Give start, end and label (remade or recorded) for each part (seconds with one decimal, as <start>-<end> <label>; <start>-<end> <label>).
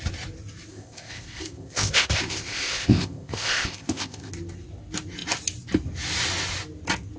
0.0-0.7 recorded; 0.7-4.3 remade; 4.3-7.2 recorded